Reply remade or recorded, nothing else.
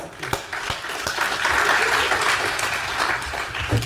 recorded